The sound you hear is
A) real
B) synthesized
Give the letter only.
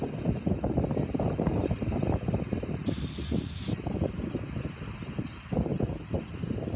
A